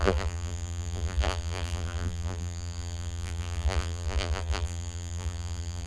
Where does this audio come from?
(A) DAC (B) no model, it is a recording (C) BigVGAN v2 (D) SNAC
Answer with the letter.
C